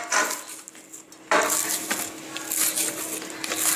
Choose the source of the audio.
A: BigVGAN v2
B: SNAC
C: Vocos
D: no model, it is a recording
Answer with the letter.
D